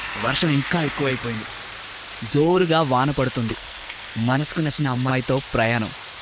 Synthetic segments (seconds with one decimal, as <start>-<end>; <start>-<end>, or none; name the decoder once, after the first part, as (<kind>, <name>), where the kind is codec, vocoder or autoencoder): 0.0-1.1 (codec, SNAC); 2.3-2.7; 3.5-5.1